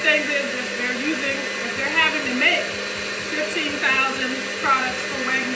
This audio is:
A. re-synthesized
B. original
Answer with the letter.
B